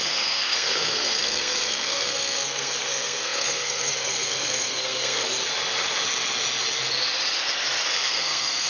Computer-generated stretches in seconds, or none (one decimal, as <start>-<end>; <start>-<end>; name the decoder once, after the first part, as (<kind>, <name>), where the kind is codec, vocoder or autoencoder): 0.0-5.2 (codec, SNAC); 7.9-8.7